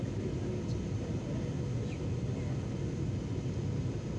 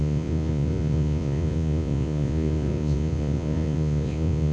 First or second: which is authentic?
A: first